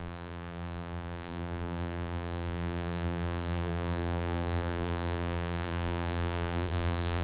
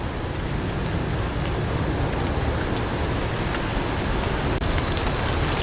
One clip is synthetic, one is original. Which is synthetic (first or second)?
first